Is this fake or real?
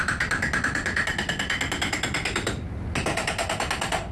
real